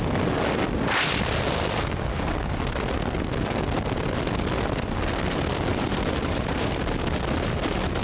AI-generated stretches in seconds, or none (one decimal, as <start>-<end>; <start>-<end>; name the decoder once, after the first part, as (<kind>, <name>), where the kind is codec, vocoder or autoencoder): 5.7-6.8 (vocoder, BigVGAN v2)